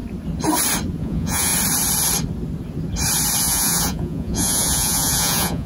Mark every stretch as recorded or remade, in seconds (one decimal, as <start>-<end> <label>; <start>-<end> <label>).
0.0-1.0 recorded; 1.0-1.5 remade; 1.5-3.4 recorded; 3.4-5.7 remade